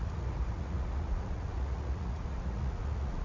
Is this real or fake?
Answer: fake